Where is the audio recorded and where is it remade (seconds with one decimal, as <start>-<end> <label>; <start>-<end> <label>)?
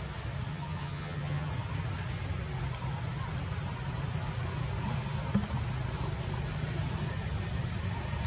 0.0-0.5 recorded; 0.5-1.5 remade; 1.5-8.3 recorded